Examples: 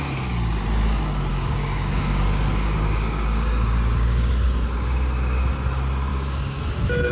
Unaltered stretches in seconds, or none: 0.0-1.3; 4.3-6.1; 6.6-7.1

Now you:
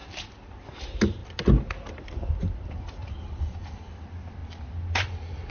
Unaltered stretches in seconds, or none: 0.0-4.4

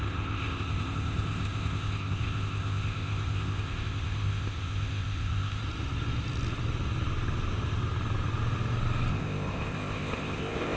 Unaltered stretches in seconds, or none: 5.6-9.1